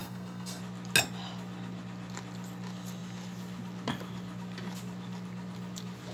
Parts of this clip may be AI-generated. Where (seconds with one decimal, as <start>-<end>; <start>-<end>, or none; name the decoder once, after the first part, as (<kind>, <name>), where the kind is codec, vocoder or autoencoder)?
0.0-0.6 (codec, SNAC)